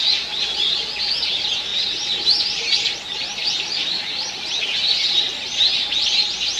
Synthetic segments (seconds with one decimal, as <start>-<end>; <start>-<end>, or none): none